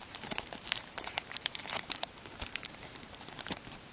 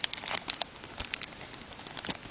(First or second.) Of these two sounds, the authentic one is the second